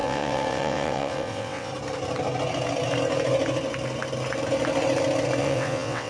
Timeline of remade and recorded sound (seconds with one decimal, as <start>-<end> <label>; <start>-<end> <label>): 0.0-1.7 remade; 1.7-5.4 recorded; 5.4-6.1 remade